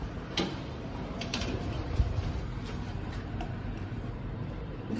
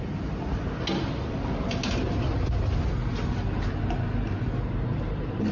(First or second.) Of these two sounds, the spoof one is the first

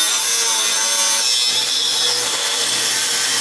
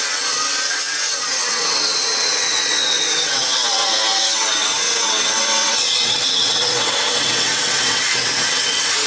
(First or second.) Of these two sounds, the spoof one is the second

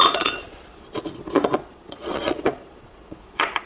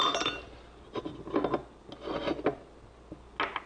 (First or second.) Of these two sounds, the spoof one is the first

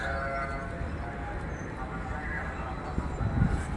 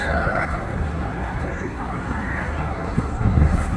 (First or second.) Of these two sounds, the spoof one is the second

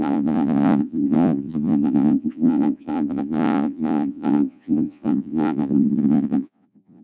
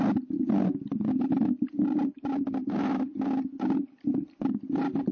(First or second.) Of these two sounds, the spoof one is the first